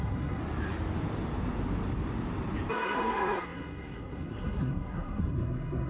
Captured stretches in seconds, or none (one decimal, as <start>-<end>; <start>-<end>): 0.4-2.7